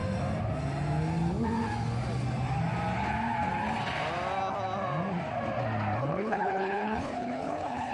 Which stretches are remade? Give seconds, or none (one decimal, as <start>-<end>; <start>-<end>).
6.0-7.9

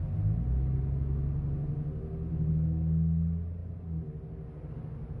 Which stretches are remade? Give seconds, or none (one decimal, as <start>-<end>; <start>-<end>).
none

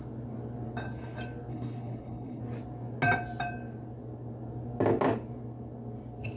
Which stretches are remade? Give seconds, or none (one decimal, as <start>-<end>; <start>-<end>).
1.5-2.4